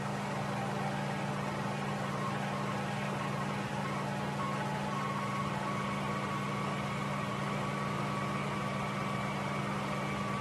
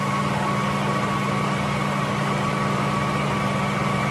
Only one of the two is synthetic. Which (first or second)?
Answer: second